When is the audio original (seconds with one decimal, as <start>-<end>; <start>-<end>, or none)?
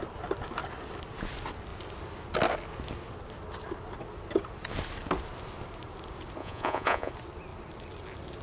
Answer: 0.0-6.4; 7.1-8.4